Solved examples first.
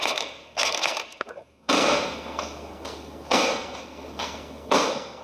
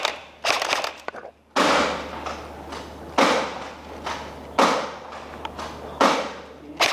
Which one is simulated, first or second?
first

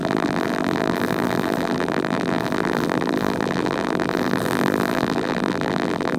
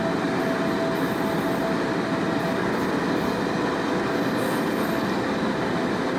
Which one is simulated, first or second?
first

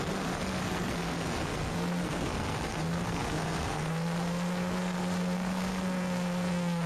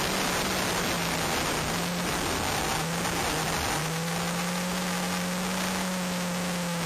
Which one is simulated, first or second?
first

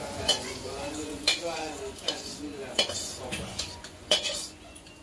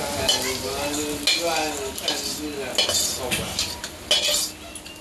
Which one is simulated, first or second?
first